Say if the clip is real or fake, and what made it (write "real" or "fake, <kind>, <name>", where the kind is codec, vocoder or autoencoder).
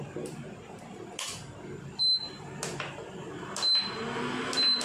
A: real